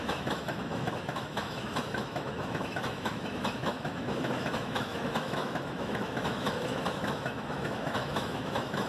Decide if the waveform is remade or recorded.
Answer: remade